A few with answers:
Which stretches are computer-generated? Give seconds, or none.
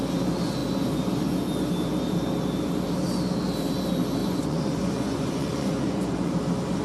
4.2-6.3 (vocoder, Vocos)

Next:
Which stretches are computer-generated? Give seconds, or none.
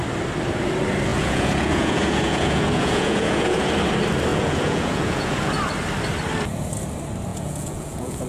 1.1-3.7 (vocoder, Vocos); 4.3-5.5; 7.3-8.3